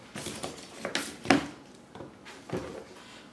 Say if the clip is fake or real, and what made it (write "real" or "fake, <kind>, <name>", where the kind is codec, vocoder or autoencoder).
real